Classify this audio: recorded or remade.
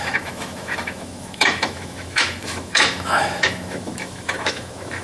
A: remade